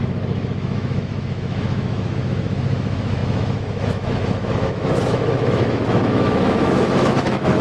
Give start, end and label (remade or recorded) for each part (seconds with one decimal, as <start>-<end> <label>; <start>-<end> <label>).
0.0-7.6 remade